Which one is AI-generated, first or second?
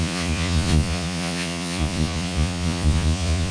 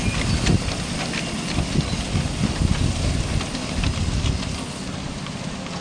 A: first